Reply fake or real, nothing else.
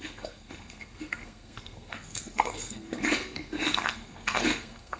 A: fake